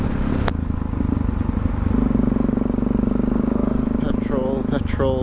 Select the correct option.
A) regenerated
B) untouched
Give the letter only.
B